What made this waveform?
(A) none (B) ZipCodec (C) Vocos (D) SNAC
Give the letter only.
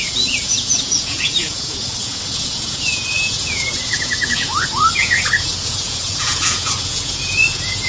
C